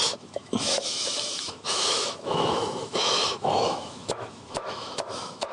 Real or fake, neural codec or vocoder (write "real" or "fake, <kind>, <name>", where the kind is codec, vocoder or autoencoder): fake, autoencoder, DAC-VAE